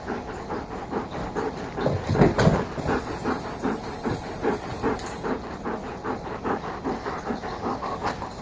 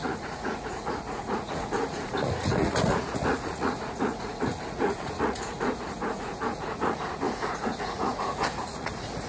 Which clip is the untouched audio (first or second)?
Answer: first